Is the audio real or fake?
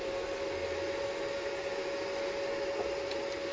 real